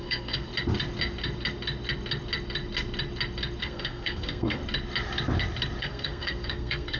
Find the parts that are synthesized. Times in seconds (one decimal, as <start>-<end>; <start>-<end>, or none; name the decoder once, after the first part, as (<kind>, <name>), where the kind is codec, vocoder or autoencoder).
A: 0.0-0.5 (codec, SNAC); 3.6-4.6; 5.8-7.0